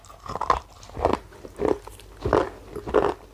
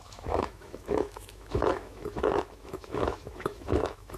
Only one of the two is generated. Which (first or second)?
second